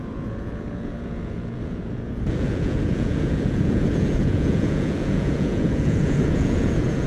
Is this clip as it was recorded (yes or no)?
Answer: no